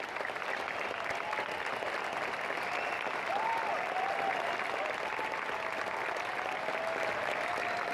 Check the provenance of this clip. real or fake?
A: real